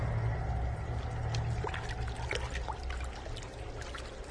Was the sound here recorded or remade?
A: recorded